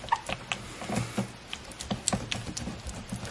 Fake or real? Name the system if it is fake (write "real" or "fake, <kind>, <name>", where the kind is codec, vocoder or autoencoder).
real